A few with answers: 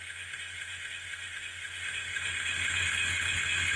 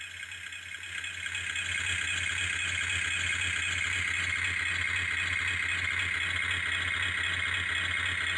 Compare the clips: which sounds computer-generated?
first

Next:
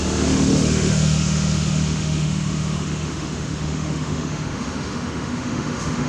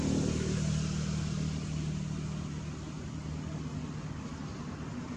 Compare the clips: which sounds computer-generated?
first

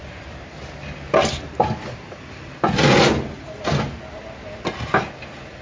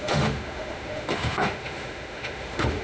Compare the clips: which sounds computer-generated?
second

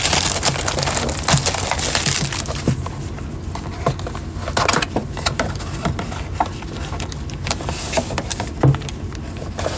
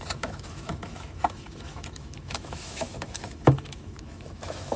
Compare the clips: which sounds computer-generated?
second